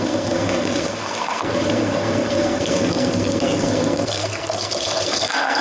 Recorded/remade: remade